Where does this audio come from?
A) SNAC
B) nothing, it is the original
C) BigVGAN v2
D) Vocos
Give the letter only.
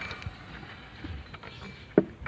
B